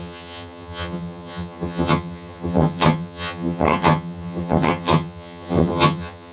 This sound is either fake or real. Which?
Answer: fake